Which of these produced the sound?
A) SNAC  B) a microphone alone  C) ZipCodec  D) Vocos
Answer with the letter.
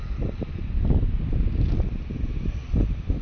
B